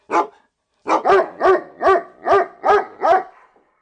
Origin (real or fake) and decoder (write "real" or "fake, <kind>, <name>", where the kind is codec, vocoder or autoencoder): real